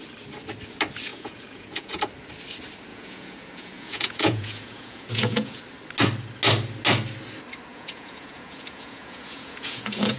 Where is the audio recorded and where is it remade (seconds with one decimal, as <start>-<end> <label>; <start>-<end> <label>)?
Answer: 0.0-1.1 recorded; 1.1-2.0 remade; 2.0-2.9 recorded; 2.9-5.6 remade; 5.6-7.7 recorded; 7.7-10.2 remade

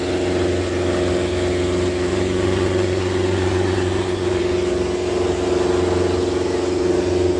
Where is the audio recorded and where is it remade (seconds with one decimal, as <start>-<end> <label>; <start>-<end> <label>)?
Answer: 0.0-2.1 recorded; 2.1-4.4 remade; 4.4-7.4 recorded